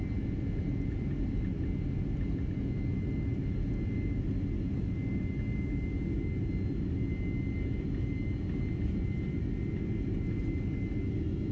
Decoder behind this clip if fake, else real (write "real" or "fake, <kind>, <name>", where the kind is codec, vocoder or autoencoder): real